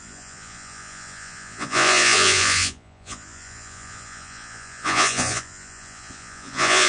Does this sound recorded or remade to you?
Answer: remade